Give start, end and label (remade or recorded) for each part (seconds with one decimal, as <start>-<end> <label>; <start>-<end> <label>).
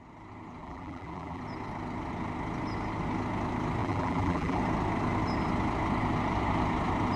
0.0-0.6 recorded; 0.6-1.4 remade; 1.4-3.8 recorded; 3.8-4.6 remade; 4.6-7.2 recorded